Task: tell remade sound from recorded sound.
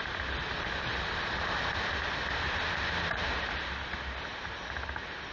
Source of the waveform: recorded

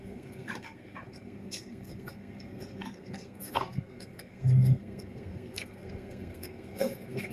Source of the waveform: remade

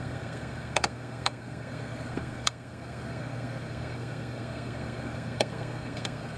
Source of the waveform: remade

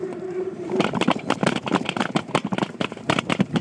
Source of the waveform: remade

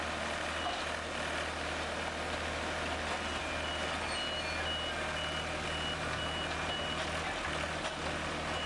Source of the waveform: recorded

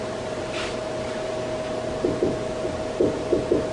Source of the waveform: recorded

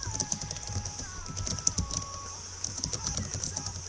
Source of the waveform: recorded